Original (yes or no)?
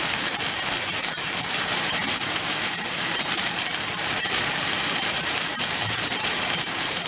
no